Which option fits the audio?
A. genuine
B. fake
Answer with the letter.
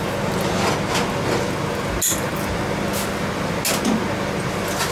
A